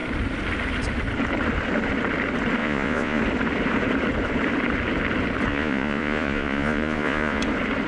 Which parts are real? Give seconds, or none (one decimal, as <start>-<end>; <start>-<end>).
0.0-2.6; 3.2-5.5; 7.4-7.9